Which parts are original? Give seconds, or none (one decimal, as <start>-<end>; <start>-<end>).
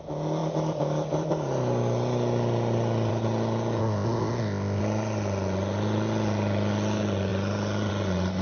0.0-3.8; 4.8-8.4